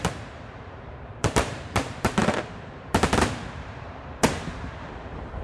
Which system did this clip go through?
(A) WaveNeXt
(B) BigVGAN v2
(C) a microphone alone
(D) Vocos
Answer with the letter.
B